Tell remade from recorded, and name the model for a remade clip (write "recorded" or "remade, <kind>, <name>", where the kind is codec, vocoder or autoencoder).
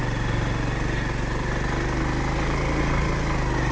recorded